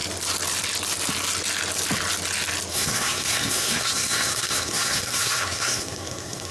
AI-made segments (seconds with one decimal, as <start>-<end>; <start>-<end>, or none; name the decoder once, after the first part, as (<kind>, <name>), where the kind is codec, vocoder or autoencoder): 2.7-6.5 (codec, SNAC)